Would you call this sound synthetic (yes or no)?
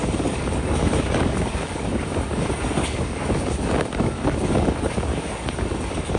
yes